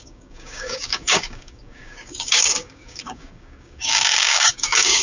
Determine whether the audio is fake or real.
fake